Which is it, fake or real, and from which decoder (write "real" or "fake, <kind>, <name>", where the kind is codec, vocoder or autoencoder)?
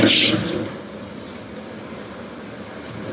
real